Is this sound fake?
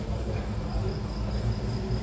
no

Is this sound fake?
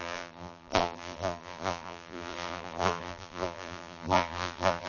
yes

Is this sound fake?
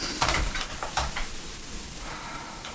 yes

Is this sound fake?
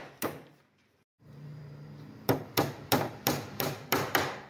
yes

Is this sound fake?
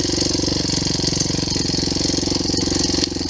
no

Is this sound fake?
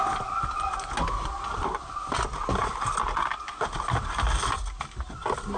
no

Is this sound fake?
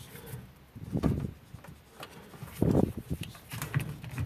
no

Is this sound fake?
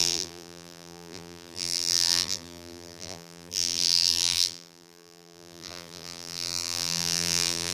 yes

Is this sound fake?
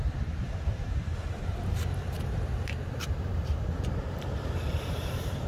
yes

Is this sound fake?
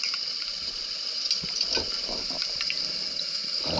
yes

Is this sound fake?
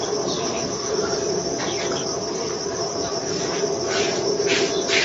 yes